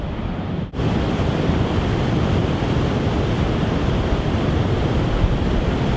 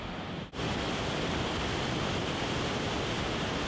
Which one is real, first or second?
second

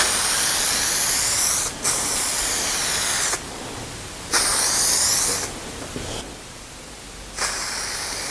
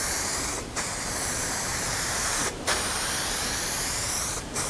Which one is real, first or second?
first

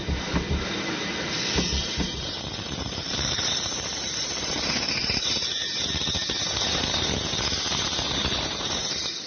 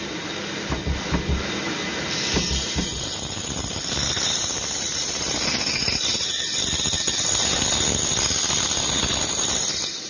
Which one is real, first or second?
second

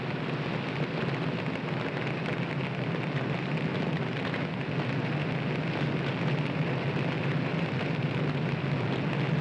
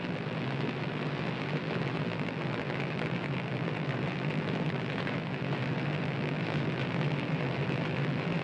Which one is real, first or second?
first